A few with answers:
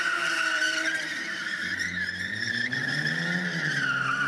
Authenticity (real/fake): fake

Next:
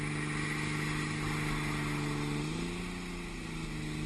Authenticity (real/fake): real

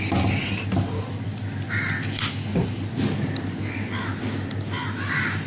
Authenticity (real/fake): real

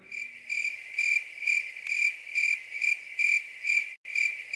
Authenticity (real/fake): real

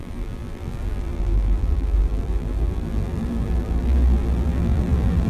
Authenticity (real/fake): fake